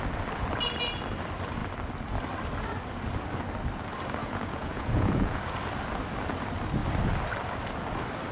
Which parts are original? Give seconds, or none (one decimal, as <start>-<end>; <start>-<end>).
0.0-4.2; 5.4-8.3